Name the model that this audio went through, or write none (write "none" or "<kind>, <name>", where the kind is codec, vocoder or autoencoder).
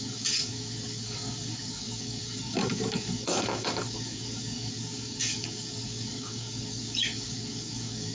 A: codec, DAC